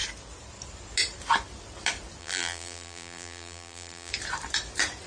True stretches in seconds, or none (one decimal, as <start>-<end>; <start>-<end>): 0.0-2.2; 4.1-5.1